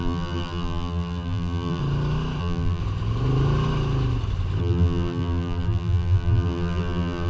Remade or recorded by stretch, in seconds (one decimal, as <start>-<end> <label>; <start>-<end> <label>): 0.0-1.8 remade; 1.8-2.4 recorded; 2.4-2.8 remade; 2.8-4.6 recorded; 4.6-7.3 remade